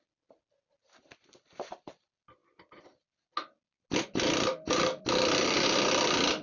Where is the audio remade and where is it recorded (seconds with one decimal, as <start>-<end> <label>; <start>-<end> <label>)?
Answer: 0.0-6.4 recorded